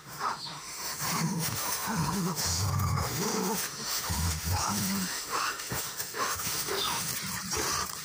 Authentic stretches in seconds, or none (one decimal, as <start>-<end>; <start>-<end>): 7.1-8.0